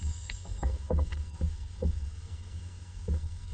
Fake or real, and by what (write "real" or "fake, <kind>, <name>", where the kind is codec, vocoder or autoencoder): fake, codec, SNAC